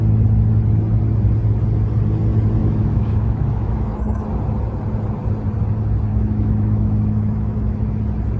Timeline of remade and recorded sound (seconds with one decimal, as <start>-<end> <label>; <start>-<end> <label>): 0.0-2.6 recorded; 2.6-4.2 remade; 4.2-6.1 recorded; 6.1-8.0 remade; 8.0-8.4 recorded